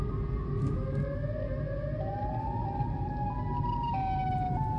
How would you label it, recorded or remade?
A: recorded